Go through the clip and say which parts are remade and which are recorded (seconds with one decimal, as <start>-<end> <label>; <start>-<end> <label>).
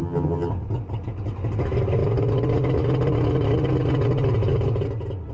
0.0-0.5 remade; 0.5-5.3 recorded